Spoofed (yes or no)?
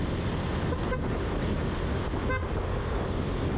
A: no